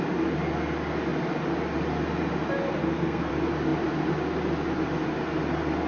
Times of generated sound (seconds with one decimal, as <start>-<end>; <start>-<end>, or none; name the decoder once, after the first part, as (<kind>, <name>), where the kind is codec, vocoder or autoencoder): 2.8-3.3 (codec, SNAC)